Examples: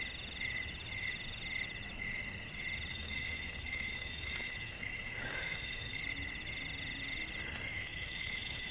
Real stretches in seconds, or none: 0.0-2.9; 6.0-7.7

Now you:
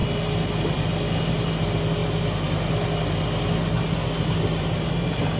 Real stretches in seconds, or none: 0.0-5.4

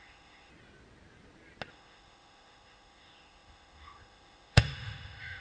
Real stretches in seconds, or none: 0.5-1.7

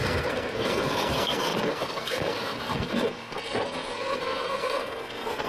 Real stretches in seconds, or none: none

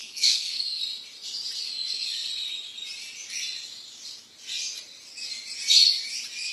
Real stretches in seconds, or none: 0.6-6.5

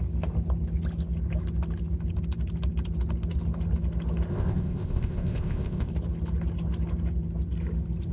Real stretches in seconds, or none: 0.0-4.3; 5.9-8.1

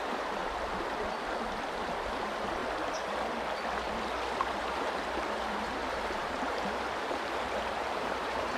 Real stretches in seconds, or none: 0.4-1.7; 2.6-4.5